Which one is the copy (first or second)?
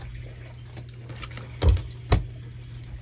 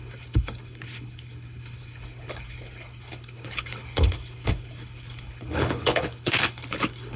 second